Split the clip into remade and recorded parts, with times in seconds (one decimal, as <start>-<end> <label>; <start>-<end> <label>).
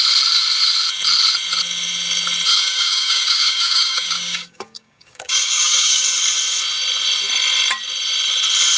0.0-2.5 recorded; 2.5-6.2 remade; 6.2-8.8 recorded